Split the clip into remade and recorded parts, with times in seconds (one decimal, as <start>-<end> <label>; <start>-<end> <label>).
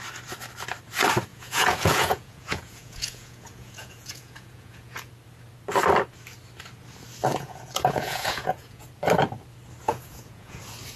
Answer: 0.0-1.3 recorded; 1.3-5.1 remade; 5.1-7.3 recorded; 7.3-8.9 remade; 8.9-9.8 recorded; 9.8-10.6 remade; 10.6-11.0 recorded